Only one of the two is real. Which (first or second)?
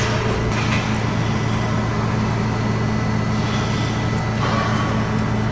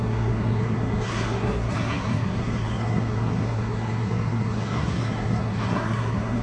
first